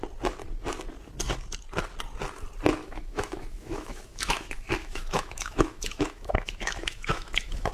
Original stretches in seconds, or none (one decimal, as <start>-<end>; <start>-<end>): 0.0-2.8